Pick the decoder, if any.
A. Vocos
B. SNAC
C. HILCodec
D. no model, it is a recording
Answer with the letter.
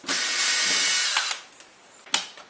D